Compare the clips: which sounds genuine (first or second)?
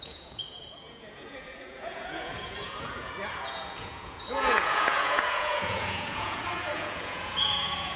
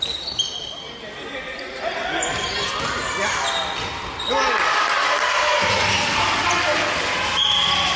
second